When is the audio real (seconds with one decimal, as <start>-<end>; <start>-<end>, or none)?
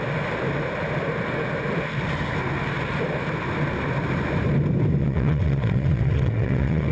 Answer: 0.0-5.0